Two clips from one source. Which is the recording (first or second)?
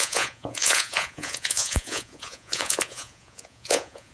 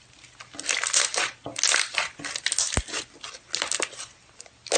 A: second